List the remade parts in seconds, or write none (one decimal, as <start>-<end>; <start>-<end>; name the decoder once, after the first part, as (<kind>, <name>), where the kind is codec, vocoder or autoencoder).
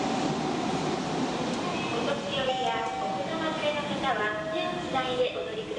none